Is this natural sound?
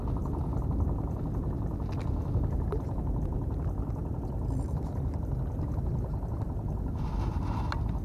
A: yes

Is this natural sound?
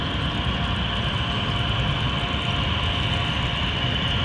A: yes